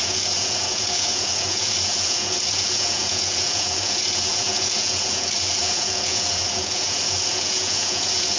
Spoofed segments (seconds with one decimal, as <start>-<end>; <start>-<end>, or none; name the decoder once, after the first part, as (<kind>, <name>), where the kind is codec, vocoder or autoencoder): 0.0-8.4 (vocoder, Vocos)

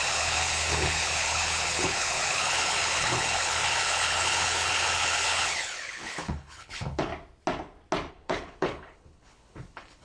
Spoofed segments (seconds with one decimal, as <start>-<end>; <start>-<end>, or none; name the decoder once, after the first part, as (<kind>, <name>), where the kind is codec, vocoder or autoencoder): 0.0-7.1 (codec, HILCodec); 8.1-10.0

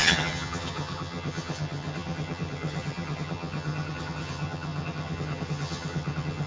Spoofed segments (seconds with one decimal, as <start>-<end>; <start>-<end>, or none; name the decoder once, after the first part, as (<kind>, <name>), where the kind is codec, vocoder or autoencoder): 0.0-6.5 (vocoder, HiFi-GAN)

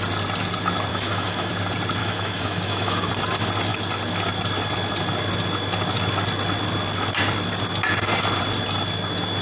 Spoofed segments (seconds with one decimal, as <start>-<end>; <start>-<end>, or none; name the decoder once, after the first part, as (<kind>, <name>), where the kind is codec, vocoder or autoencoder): 0.9-1.5 (autoencoder, DAC-VAE); 2.0-3.1

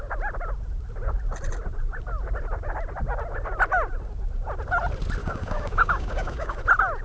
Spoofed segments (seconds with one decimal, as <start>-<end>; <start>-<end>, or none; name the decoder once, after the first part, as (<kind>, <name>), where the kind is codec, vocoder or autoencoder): 5.2-6.6 (codec, DAC)

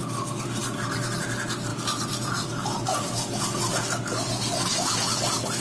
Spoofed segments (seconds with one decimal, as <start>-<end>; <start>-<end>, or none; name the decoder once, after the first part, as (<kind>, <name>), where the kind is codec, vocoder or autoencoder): none

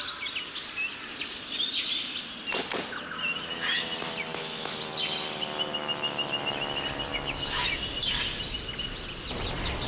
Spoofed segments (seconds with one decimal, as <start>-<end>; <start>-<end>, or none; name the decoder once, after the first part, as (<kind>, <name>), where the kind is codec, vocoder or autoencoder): 4.3-4.8 (autoencoder, DAC-VAE); 7.1-7.7

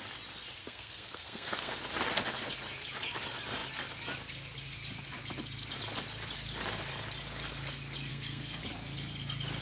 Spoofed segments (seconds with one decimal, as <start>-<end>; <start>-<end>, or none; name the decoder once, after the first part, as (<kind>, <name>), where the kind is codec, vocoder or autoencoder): 0.6-1.7 (codec, SNAC); 8.1-8.6